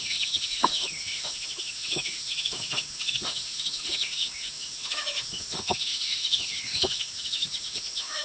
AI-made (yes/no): yes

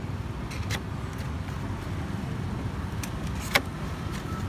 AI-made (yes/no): no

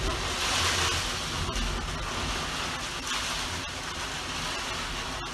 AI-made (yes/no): no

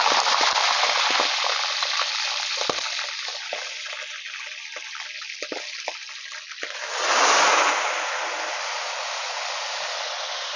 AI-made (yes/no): no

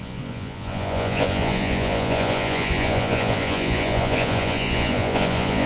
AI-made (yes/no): yes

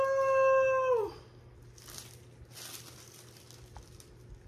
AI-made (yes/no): no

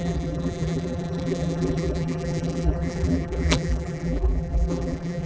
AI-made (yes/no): yes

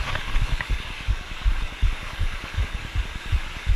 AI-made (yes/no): yes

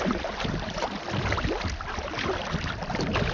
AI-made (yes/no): no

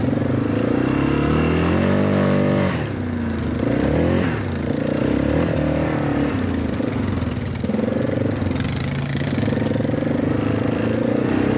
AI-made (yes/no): no